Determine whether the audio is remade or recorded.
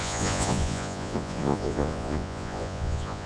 remade